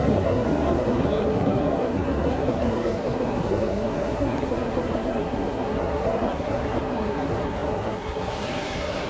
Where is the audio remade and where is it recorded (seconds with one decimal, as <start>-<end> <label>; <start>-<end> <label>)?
0.0-9.1 remade